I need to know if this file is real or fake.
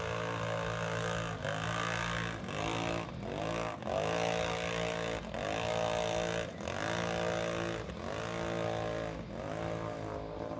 real